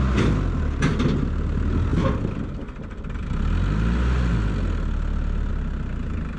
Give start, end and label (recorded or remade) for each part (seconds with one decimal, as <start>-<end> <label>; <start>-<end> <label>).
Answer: 0.0-6.4 recorded